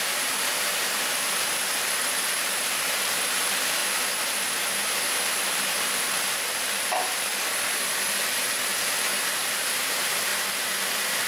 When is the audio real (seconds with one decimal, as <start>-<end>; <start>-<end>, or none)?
3.8-6.0; 7.3-9.4; 10.3-10.8